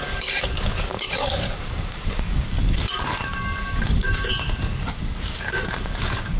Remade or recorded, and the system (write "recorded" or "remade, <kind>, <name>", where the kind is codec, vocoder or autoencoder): remade, codec, DAC